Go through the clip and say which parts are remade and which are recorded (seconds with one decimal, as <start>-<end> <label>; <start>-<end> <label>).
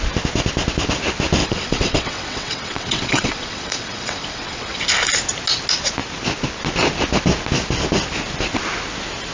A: 0.0-1.4 recorded; 1.4-4.8 remade; 4.8-9.3 recorded